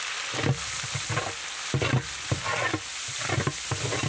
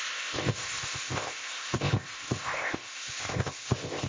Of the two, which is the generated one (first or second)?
second